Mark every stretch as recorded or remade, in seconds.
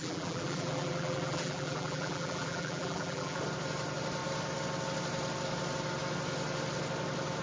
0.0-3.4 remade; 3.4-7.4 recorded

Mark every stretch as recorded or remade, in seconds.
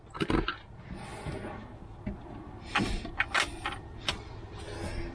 0.0-5.1 recorded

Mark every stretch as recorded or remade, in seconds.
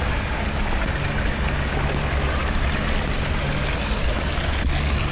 0.0-5.1 recorded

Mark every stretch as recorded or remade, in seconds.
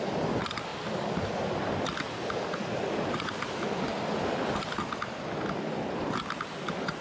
0.0-0.7 recorded; 0.7-2.0 remade; 2.0-7.0 recorded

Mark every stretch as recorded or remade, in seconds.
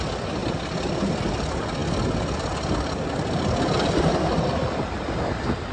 0.0-0.4 recorded; 0.4-1.2 remade; 1.2-5.7 recorded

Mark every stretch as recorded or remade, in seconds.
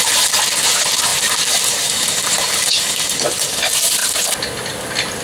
0.0-1.1 recorded; 1.1-2.8 remade; 2.8-5.2 recorded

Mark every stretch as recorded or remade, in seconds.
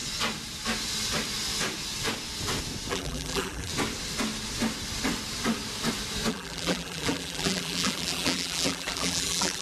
0.0-2.9 recorded; 2.9-3.7 remade; 3.7-6.3 recorded; 6.3-9.6 remade